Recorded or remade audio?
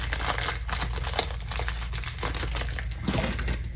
recorded